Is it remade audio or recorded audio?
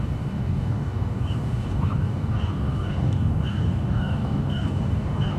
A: remade